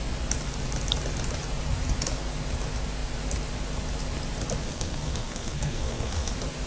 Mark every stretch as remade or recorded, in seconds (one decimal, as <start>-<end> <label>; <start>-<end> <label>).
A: 0.0-4.6 recorded; 4.6-6.3 remade; 6.3-6.7 recorded